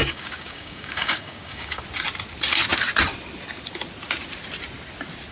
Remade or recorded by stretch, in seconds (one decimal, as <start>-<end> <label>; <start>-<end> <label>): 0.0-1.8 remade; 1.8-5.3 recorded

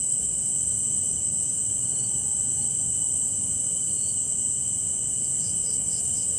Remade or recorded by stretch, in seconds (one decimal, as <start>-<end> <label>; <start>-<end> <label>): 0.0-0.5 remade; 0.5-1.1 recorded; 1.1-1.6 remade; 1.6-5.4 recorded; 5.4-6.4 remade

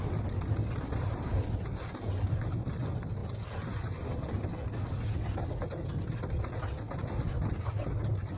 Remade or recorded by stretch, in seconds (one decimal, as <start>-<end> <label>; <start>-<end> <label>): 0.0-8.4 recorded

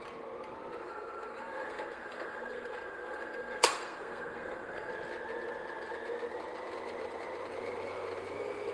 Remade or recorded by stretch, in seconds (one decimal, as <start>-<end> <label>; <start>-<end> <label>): 0.0-0.8 recorded; 0.8-4.9 remade; 4.9-8.7 recorded

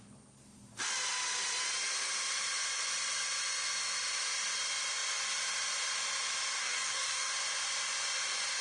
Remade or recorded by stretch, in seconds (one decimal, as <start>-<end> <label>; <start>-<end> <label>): 0.0-6.6 recorded; 6.6-7.3 remade; 7.3-8.6 recorded